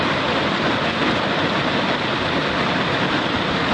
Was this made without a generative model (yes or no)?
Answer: yes